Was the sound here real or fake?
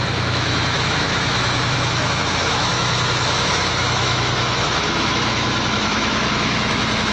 fake